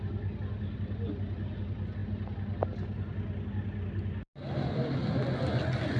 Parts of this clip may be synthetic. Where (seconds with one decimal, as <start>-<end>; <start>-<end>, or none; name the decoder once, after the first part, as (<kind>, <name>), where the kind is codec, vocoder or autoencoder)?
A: none